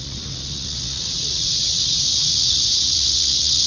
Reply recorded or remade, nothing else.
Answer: remade